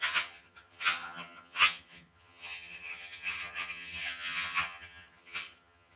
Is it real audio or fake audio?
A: fake